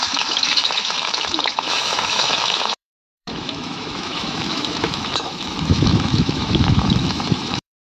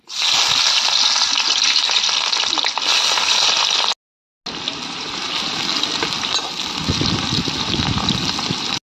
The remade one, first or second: first